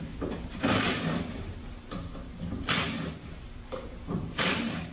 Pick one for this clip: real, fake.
fake